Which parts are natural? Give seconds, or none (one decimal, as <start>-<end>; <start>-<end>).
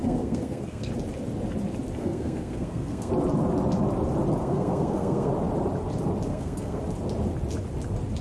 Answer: 0.9-2.0; 3.1-4.4; 5.3-6.3; 6.8-8.2